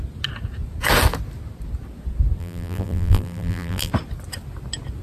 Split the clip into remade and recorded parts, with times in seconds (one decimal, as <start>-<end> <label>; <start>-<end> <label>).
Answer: 0.0-2.4 recorded; 2.4-3.9 remade; 3.9-5.0 recorded